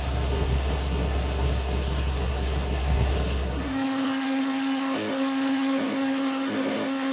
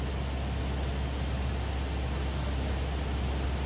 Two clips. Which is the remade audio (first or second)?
first